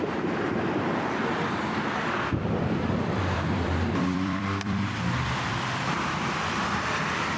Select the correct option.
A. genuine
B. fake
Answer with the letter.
B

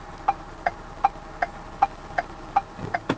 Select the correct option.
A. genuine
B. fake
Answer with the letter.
A